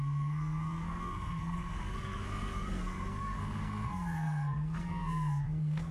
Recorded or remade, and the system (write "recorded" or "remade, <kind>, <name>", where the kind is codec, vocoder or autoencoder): remade, codec, SNAC